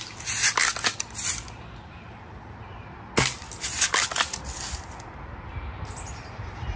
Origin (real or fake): real